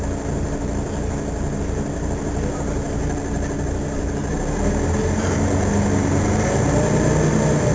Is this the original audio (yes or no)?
no